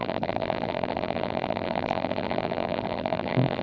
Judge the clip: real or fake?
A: fake